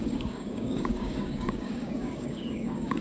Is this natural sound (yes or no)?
no